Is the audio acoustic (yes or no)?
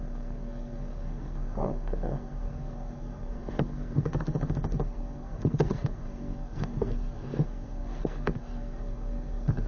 no